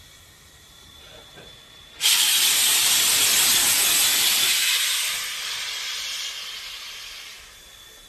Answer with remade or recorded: remade